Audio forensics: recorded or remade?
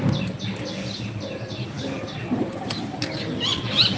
recorded